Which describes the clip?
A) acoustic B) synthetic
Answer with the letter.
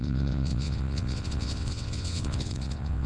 B